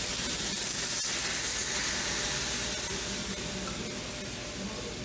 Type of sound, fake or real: real